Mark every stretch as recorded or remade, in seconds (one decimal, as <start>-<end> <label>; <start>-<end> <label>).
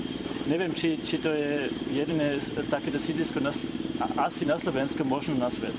0.0-5.8 remade